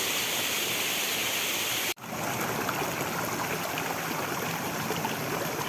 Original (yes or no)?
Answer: yes